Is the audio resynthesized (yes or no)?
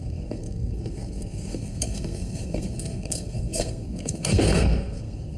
yes